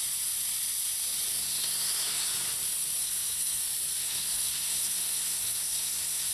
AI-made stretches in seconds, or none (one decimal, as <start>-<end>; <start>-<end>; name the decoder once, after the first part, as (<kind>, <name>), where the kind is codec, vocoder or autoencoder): 1.3-2.3 (codec, SNAC); 3.0-3.6; 4.0-6.3